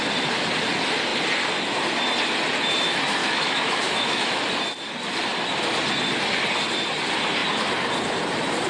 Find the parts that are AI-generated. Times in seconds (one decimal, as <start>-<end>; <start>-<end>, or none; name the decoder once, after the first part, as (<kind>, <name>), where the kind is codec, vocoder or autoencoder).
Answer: 3.2-4.4 (autoencoder, DAC-VAE)